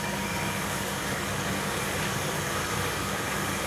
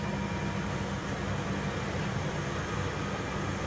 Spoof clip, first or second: first